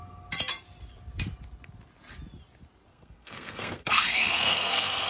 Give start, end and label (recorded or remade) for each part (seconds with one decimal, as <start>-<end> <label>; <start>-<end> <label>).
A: 0.0-2.9 recorded; 2.9-5.1 remade